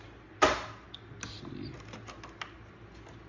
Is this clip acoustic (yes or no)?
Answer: yes